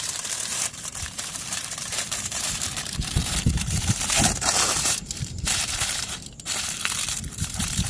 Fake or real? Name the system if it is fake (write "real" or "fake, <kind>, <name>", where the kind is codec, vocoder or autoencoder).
fake, vocoder, BigVGAN v2